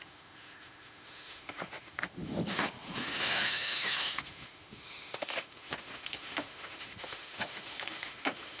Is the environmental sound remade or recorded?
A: remade